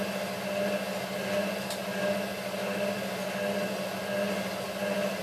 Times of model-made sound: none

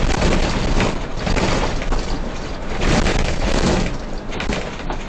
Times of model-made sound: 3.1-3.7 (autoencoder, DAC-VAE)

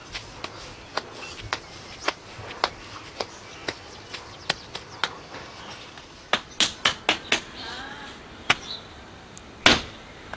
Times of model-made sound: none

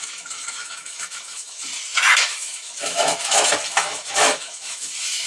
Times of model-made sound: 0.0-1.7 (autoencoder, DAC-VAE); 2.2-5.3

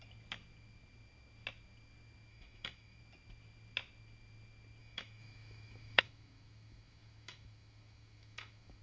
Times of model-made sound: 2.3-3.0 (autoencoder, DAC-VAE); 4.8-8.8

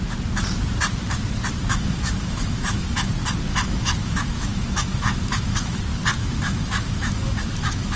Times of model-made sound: 1.7-3.1 (autoencoder, DAC-VAE); 3.5-5.8; 6.2-8.0